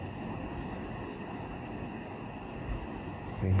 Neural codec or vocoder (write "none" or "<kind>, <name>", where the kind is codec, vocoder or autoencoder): none